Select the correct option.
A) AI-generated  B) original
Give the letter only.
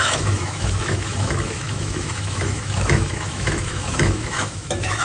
A